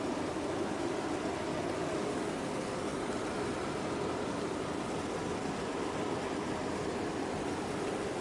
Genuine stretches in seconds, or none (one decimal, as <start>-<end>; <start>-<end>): none